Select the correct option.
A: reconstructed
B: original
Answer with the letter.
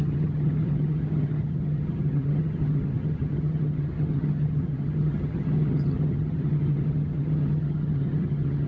A